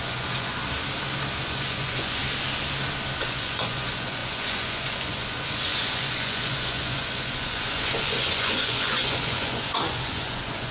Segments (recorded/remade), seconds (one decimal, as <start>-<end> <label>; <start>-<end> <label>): 0.0-0.6 remade; 0.6-1.4 recorded; 1.4-2.2 remade; 2.2-3.2 recorded; 3.2-10.7 remade